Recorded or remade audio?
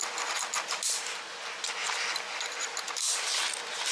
recorded